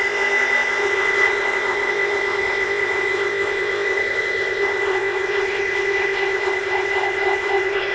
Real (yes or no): no